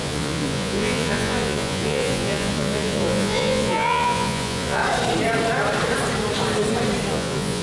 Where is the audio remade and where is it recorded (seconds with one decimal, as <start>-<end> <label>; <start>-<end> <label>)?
0.0-4.8 remade; 4.8-7.1 recorded; 7.1-7.6 remade